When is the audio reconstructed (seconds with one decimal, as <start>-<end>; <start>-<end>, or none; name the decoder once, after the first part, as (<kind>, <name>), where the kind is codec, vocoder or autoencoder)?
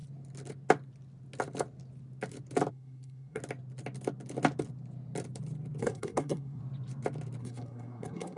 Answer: 2.7-3.4 (codec, SNAC); 5.8-6.6; 7.4-8.4